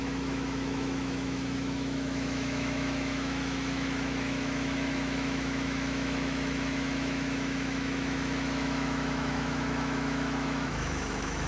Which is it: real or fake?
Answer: fake